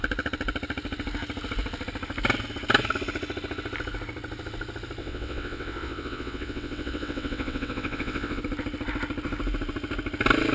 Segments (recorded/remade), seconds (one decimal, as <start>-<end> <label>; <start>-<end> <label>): 0.0-5.0 recorded; 5.0-8.4 remade; 8.4-10.5 recorded